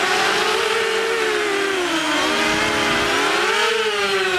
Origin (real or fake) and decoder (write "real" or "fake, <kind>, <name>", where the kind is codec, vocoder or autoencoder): real